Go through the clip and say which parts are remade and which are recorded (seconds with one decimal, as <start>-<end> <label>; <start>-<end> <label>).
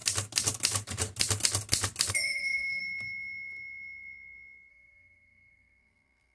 0.0-2.1 recorded; 2.1-2.8 remade; 2.8-4.7 recorded; 4.7-6.3 remade